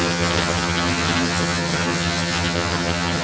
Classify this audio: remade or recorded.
remade